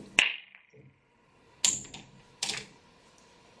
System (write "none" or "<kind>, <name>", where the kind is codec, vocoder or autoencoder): none